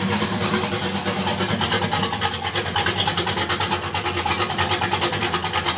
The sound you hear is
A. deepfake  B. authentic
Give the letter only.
B